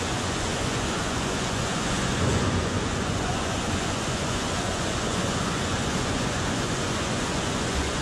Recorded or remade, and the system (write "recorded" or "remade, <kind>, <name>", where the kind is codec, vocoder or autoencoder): remade, vocoder, Vocos